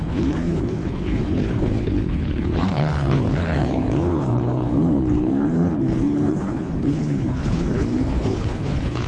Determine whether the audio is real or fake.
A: fake